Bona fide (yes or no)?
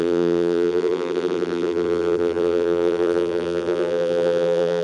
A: no